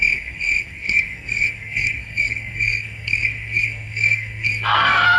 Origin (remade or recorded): remade